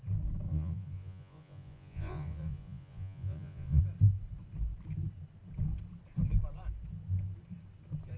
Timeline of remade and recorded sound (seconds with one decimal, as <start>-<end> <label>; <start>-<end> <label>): 0.0-0.5 recorded; 0.5-3.8 remade; 3.8-8.2 recorded